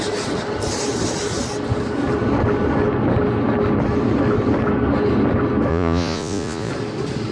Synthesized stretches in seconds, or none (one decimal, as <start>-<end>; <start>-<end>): 5.7-6.7